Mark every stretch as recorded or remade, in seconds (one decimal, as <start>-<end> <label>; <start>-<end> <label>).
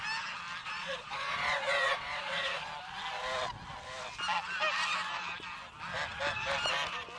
0.0-0.6 recorded; 0.6-2.7 remade; 2.7-7.2 recorded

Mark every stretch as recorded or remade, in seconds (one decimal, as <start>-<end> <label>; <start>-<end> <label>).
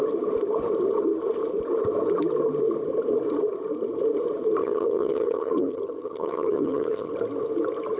0.0-4.6 recorded; 4.6-7.1 remade; 7.1-8.0 recorded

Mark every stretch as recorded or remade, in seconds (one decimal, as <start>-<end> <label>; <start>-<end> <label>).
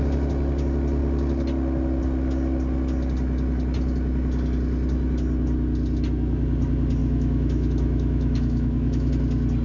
0.0-7.0 recorded; 7.0-9.1 remade; 9.1-9.6 recorded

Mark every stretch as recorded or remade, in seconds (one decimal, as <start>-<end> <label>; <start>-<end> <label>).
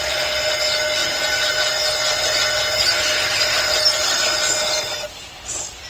0.0-5.9 recorded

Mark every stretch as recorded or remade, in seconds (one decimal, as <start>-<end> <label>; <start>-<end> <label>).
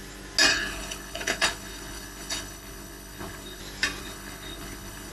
0.0-0.5 recorded; 0.5-3.6 remade; 3.6-4.0 recorded; 4.0-5.1 remade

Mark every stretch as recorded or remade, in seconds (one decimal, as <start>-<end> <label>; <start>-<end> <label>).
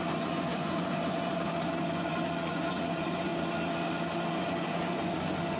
0.0-3.3 remade; 3.3-4.3 recorded; 4.3-5.6 remade